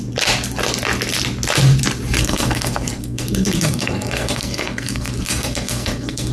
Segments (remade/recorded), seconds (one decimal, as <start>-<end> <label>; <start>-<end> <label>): 0.0-2.2 recorded; 2.2-6.3 remade